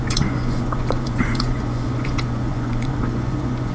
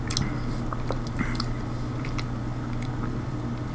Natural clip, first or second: second